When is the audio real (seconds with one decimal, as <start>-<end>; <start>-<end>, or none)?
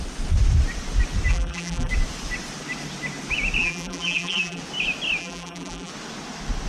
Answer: 0.0-1.3; 1.9-3.6; 4.6-5.2; 5.9-6.7